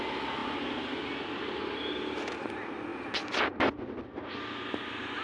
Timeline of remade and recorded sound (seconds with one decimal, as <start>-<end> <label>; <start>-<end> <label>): 0.0-5.2 recorded